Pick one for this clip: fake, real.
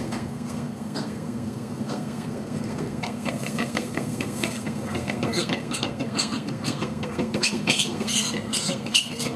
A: fake